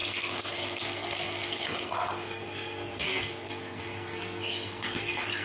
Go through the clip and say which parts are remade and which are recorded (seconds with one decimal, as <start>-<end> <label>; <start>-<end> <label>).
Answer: 0.0-5.4 remade